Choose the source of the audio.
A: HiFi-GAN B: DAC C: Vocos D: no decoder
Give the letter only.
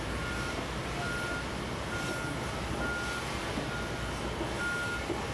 D